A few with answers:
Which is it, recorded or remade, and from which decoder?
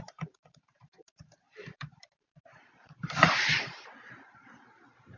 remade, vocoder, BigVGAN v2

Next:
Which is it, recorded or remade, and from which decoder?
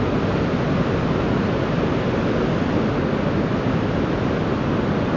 recorded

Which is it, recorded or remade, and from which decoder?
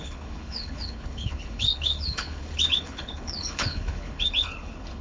remade, codec, HILCodec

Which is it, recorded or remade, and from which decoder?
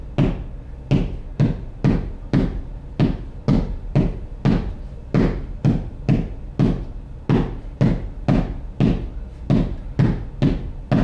recorded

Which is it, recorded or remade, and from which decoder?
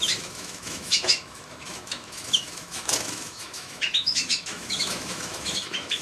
remade, autoencoder, DAC-VAE